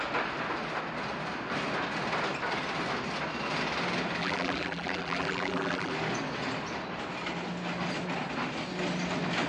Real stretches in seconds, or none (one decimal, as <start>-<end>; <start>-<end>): 0.0-4.2; 5.9-9.5